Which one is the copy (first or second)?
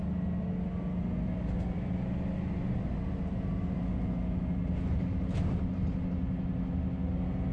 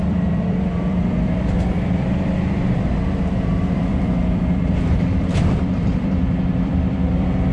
second